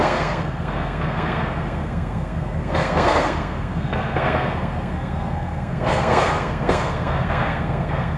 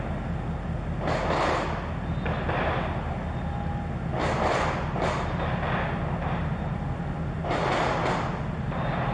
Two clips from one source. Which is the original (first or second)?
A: second